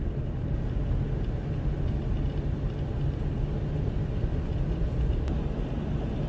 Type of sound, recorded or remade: recorded